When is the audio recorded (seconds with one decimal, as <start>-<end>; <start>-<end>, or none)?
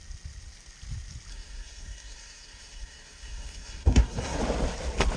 0.0-1.3; 4.4-5.2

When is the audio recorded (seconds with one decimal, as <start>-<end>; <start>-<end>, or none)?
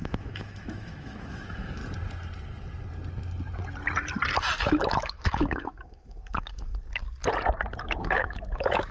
1.8-4.6; 6.7-7.8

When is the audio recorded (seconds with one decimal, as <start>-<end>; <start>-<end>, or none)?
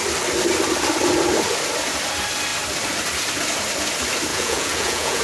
0.0-4.3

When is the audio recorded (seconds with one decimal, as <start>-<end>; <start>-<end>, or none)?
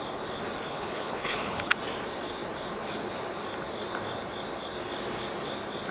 0.0-0.7; 1.7-5.9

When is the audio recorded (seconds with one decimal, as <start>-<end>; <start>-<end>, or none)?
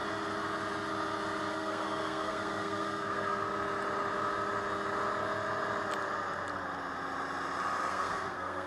0.0-1.5; 3.4-7.9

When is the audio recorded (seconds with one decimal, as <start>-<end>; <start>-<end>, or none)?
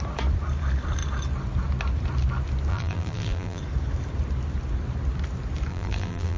0.0-2.7; 3.6-5.7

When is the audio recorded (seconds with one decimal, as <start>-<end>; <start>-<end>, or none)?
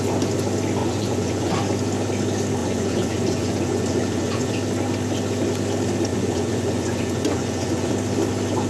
0.0-0.8; 1.5-2.6; 4.5-6.1; 7.9-8.7